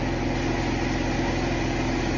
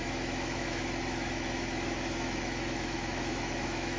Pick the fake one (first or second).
second